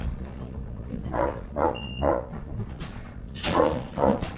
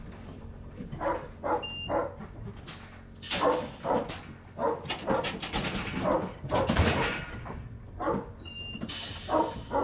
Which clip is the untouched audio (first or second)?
second